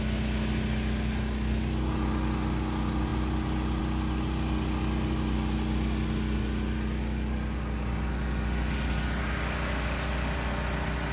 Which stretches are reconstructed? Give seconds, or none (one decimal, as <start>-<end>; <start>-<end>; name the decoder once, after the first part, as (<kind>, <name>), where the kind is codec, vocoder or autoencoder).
none